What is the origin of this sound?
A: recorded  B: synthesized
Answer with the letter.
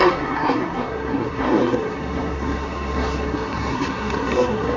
B